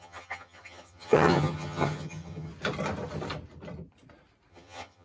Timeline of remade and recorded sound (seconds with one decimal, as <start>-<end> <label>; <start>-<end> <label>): 0.0-2.5 remade; 2.5-4.5 recorded; 4.5-5.0 remade

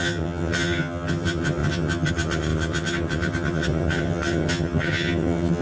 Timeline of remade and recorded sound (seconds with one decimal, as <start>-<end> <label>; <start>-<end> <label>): 0.0-5.6 remade

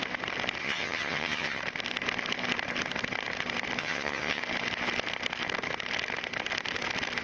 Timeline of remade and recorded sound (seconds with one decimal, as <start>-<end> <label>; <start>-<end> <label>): 0.0-0.6 recorded; 0.6-1.6 remade; 1.6-3.8 recorded; 3.8-4.4 remade; 4.4-7.2 recorded

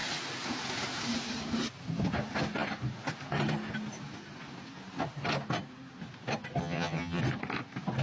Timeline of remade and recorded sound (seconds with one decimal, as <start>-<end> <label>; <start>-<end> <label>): 0.0-6.6 recorded; 6.6-7.2 remade; 7.2-8.0 recorded

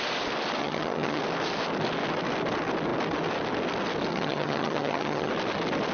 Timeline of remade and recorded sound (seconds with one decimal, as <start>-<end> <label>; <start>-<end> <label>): 0.0-0.6 recorded; 0.6-1.2 remade; 1.2-4.1 recorded; 4.1-5.3 remade; 5.3-5.9 recorded

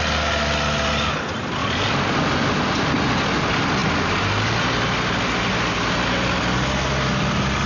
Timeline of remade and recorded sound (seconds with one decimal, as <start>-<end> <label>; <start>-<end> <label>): 0.0-7.7 recorded

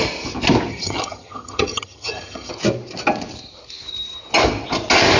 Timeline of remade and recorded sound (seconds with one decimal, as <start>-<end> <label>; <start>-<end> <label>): 0.0-0.7 recorded; 0.7-2.5 remade; 2.5-5.2 recorded